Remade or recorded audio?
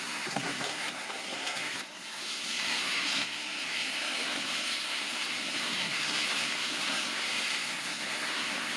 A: remade